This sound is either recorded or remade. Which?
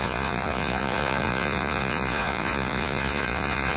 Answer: remade